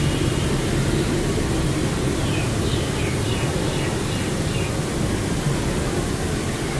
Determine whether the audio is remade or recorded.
recorded